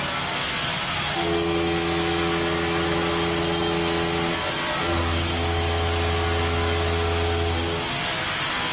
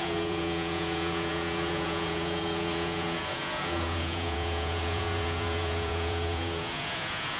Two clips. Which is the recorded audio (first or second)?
first